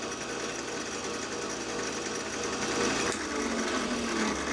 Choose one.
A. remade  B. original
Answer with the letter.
B